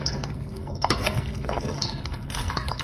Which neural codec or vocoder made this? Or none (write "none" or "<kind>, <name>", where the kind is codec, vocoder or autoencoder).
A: codec, SNAC